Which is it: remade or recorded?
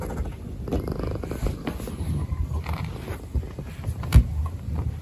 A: recorded